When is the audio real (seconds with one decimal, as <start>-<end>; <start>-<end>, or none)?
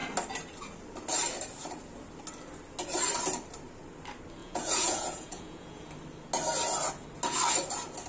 0.0-4.4; 5.9-8.1